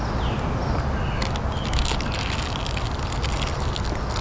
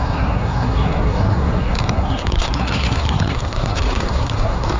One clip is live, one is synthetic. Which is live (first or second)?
first